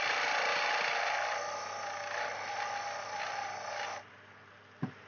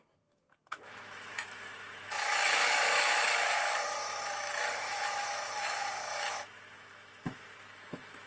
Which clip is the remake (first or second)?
second